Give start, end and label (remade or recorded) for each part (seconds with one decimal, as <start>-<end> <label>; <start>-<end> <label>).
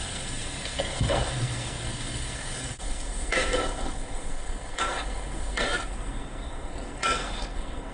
0.0-7.9 remade